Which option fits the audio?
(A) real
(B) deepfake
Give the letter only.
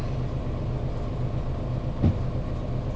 A